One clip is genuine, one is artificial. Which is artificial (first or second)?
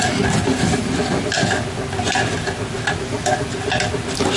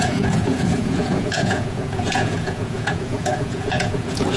second